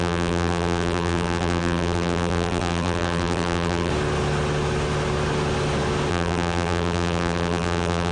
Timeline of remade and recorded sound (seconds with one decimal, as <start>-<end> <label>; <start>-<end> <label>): 0.0-3.9 remade; 3.9-6.1 recorded; 6.1-8.1 remade

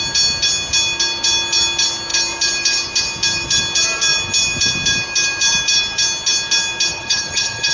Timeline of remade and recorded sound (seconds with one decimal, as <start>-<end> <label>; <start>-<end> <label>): 0.0-6.9 recorded; 6.9-7.7 remade

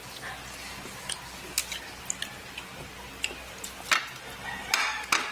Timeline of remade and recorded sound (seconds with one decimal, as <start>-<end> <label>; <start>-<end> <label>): 0.0-5.3 recorded